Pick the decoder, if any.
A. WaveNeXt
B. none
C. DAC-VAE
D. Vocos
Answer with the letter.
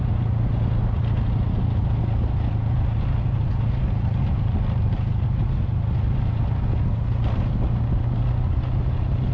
B